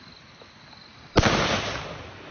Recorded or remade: recorded